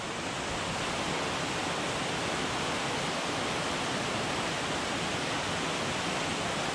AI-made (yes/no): no